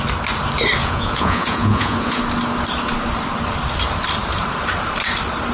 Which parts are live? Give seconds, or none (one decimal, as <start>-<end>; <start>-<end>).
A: 0.0-0.8; 2.2-5.5